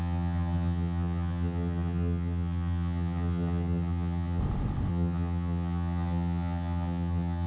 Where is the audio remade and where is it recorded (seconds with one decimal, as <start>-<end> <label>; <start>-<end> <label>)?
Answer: 0.0-4.4 remade; 4.4-4.9 recorded; 4.9-7.5 remade